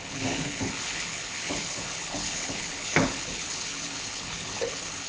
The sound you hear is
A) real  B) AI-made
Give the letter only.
B